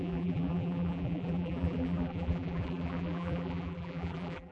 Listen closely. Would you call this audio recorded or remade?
remade